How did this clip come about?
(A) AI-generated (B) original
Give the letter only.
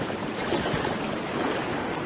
A